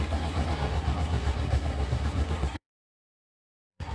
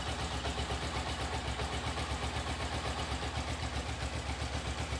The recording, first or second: second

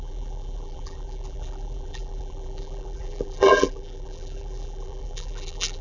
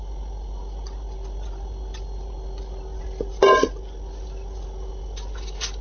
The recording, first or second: second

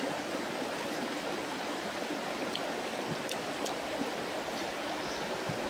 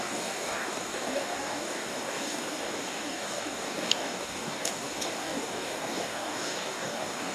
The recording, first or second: first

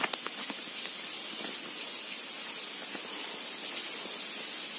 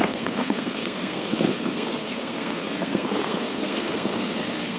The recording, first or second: first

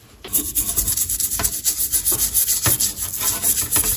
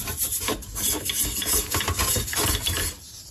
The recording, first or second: first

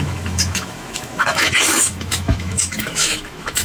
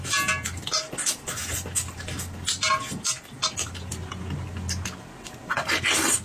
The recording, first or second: second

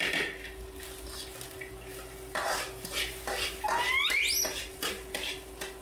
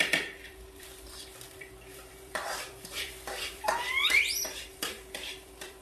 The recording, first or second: first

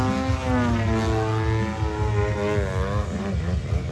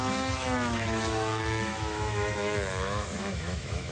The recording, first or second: first